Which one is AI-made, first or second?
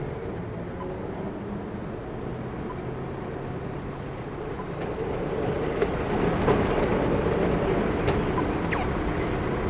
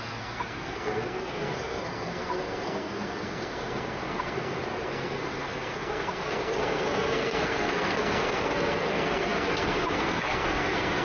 second